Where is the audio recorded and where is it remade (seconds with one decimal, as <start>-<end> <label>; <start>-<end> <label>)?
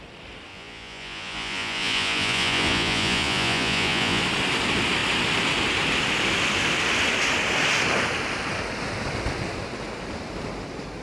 0.0-0.5 recorded; 0.5-4.2 remade; 4.2-11.0 recorded